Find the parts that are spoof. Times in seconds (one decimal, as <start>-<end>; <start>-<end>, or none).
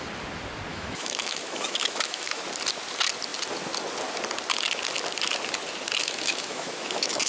0.7-2.4; 6.0-7.3